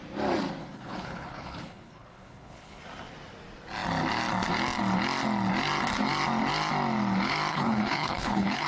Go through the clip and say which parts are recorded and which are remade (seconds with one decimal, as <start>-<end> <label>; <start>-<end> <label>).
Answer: 0.0-0.6 recorded; 0.6-2.8 remade; 2.8-7.5 recorded; 7.5-8.7 remade